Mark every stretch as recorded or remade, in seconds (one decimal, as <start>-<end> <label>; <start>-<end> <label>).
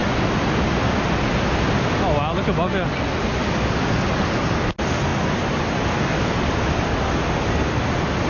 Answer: 0.0-8.3 recorded